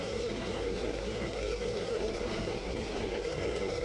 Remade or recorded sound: remade